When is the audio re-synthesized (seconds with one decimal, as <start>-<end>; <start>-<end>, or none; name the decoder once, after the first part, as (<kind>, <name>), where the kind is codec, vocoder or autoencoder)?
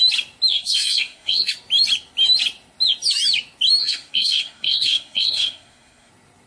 0.5-1.5 (codec, SNAC); 3.8-6.1